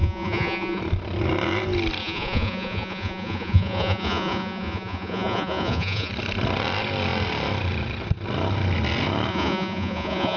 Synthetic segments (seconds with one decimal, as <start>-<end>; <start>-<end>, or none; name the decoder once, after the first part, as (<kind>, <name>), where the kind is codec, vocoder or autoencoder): 0.0-0.8 (vocoder, Vocos); 2.0-6.1; 9.3-10.4

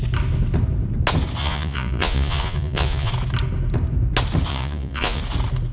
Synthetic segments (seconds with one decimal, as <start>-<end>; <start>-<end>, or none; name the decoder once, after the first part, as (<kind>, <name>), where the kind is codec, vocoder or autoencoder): 1.4-3.1 (vocoder, Vocos); 4.5-5.2

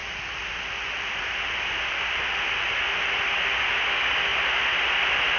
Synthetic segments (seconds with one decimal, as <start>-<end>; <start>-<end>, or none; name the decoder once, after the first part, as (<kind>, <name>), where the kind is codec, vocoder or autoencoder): none